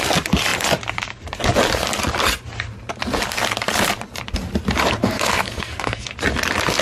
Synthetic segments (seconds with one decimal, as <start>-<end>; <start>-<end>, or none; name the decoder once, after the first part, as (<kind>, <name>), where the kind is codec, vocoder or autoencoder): 5.0-6.1 (codec, SNAC)